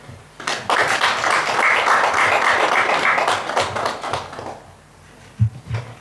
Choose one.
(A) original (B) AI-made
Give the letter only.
A